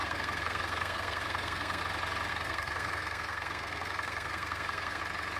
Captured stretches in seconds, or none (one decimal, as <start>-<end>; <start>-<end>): 1.8-2.3; 5.0-5.4